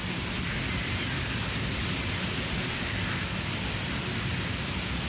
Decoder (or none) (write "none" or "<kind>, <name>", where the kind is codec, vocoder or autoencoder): none